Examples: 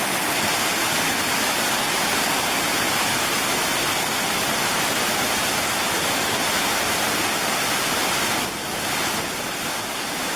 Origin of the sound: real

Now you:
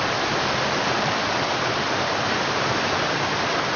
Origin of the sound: real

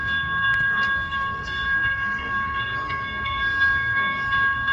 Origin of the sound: fake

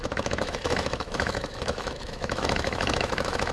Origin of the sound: fake